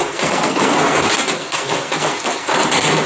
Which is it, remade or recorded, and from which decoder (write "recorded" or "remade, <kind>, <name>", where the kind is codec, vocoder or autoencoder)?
remade, codec, SNAC